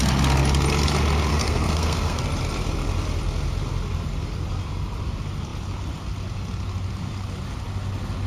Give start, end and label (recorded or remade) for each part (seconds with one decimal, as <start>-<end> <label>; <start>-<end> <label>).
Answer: 0.0-1.3 recorded; 1.3-2.2 remade; 2.2-8.3 recorded